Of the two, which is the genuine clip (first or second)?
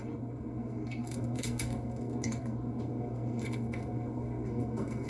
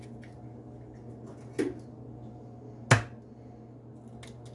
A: second